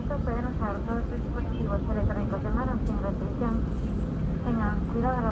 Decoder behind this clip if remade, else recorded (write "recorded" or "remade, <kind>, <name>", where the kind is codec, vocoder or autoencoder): recorded